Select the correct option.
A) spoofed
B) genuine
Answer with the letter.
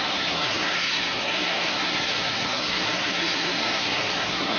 A